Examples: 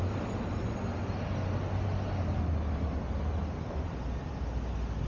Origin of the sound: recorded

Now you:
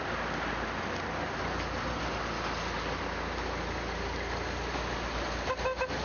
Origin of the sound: recorded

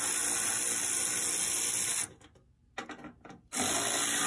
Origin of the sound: recorded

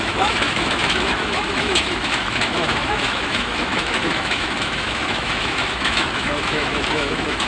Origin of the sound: remade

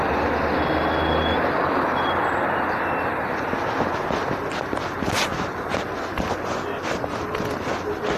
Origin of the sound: recorded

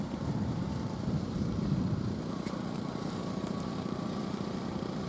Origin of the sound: remade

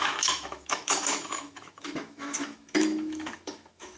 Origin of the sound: remade